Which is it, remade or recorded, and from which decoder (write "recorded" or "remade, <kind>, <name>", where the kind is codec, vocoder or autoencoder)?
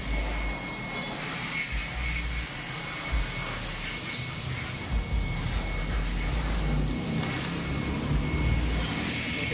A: recorded